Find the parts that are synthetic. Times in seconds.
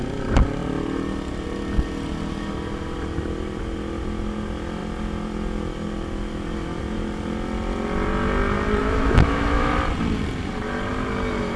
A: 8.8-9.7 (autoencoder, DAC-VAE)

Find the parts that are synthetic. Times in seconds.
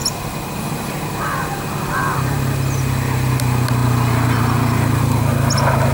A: none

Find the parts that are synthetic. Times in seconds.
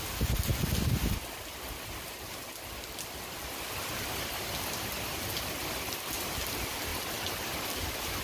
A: none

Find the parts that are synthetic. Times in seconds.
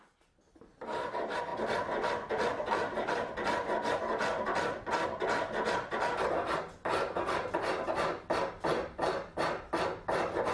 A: none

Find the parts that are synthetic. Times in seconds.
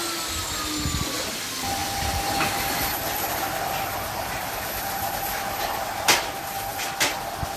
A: none